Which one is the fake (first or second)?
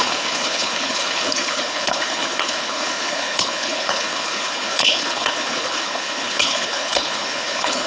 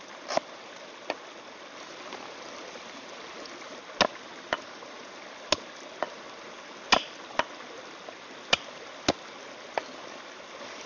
first